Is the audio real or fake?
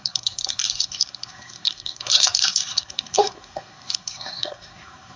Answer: fake